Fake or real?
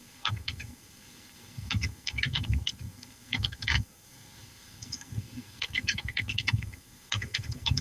fake